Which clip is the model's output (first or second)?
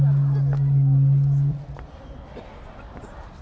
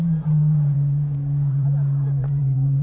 second